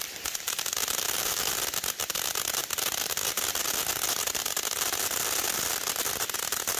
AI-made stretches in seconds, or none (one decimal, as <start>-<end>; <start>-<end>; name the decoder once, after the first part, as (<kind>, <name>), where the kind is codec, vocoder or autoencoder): 0.0-2.6 (vocoder, BigVGAN v2); 4.1-6.8